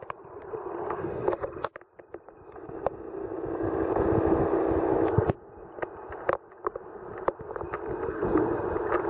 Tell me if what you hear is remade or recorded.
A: recorded